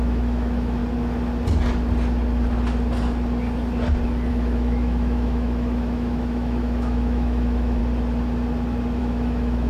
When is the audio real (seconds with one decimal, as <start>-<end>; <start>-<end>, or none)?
0.8-4.3; 7.8-9.0

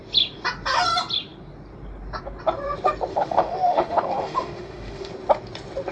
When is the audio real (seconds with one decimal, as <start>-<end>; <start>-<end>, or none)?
0.0-3.1; 5.1-5.9